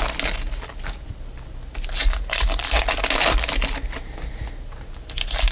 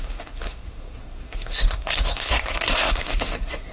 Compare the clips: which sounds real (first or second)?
first